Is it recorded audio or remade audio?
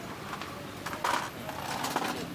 recorded